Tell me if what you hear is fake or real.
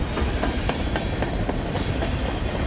real